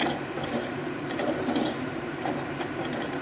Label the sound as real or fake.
fake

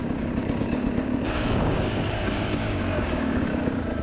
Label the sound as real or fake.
fake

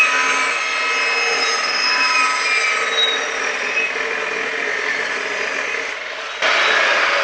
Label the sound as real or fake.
real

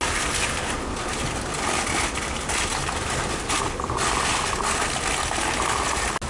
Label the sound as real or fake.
real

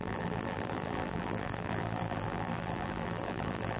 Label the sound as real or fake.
fake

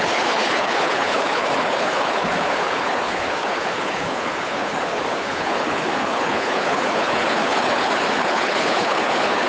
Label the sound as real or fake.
fake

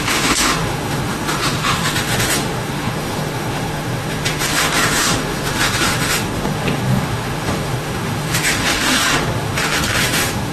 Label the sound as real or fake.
fake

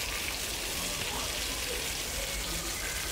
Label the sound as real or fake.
real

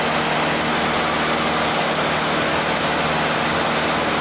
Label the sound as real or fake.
real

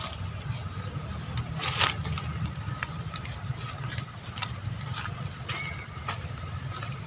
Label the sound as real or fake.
real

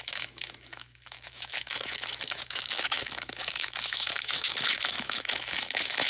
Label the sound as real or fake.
fake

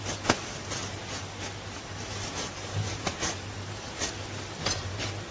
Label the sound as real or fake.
real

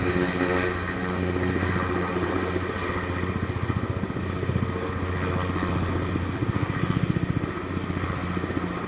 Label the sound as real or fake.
real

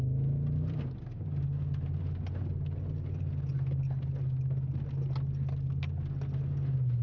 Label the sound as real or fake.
real